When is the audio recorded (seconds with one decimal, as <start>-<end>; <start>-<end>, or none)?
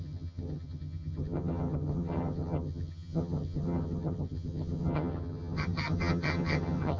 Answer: none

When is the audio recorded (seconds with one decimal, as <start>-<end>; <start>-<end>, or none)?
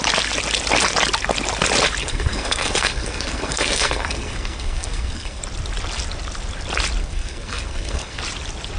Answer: 0.0-2.0; 5.4-7.0; 8.2-8.8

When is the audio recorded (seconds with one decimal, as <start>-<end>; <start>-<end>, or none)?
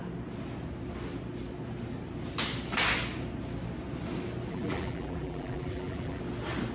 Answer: 0.0-4.5; 6.2-6.7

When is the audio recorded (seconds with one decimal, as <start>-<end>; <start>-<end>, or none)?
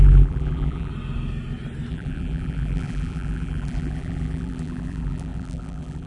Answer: 0.9-1.9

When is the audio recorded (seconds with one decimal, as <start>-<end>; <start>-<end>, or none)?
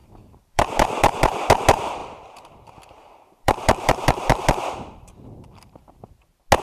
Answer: 1.5-2.0; 6.0-6.6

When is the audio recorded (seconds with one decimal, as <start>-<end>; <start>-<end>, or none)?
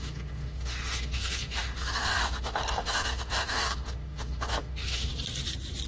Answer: 5.1-5.9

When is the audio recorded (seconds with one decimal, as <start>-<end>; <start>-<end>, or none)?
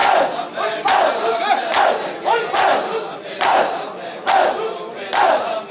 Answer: 0.0-5.7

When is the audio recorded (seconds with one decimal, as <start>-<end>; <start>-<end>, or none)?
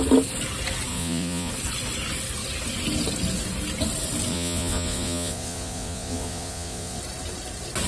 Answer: 0.0-0.9; 1.5-4.3; 7.0-7.9